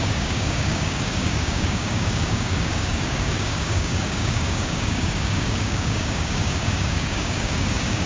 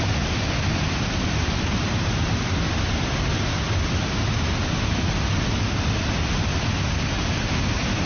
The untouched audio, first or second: second